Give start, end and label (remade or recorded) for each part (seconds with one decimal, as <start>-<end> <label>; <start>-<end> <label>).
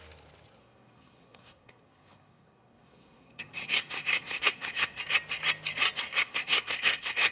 0.0-0.6 recorded; 0.6-5.0 remade; 5.0-6.2 recorded; 6.2-7.3 remade